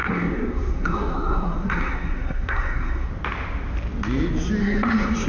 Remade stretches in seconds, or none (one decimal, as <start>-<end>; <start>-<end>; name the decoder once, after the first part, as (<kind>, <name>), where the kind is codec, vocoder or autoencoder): 0.0-3.1 (codec, SNAC); 4.6-5.3